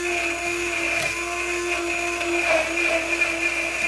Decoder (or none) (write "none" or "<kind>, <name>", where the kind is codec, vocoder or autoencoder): none